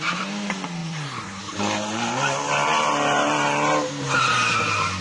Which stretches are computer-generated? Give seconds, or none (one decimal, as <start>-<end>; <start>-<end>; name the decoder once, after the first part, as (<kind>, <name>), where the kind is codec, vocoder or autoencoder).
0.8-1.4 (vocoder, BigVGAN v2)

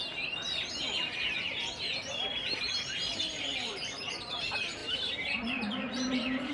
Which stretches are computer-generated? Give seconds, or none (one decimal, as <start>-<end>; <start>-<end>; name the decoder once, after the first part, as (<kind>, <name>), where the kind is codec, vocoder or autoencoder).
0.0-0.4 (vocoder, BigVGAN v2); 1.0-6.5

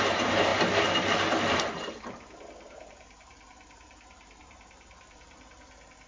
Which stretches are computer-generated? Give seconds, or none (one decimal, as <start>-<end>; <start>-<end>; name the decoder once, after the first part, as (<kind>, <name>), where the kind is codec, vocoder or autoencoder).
none

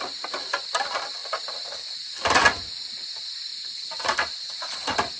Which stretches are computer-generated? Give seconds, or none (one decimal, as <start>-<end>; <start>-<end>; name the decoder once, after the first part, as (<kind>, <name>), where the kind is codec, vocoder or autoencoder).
1.2-2.1 (vocoder, BigVGAN v2); 3.5-5.2

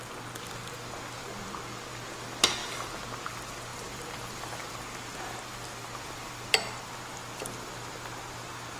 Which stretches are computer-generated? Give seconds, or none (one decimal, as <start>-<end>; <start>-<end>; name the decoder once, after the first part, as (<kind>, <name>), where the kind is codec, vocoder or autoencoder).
1.2-1.9 (vocoder, BigVGAN v2); 3.7-4.7; 5.8-6.3